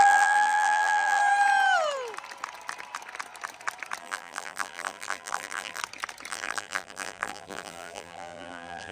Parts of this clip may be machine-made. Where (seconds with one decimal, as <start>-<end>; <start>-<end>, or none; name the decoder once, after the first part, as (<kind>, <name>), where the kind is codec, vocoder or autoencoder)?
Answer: 0.0-1.2 (vocoder, BigVGAN v2); 4.0-5.8; 6.3-8.9